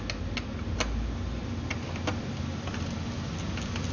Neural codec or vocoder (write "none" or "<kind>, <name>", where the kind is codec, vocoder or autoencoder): none